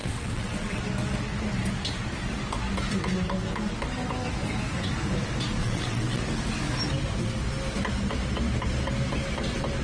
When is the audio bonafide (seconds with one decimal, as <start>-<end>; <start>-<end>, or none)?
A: 0.8-5.6; 6.2-9.8